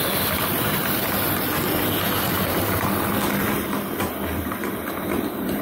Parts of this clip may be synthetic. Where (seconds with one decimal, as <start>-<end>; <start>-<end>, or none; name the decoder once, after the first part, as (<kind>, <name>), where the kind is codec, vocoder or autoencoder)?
0.0-1.0 (vocoder, BigVGAN v2); 4.4-5.6